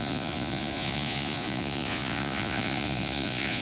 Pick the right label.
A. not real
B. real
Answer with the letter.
A